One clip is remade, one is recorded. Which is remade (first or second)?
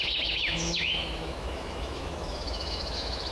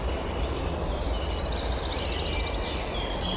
first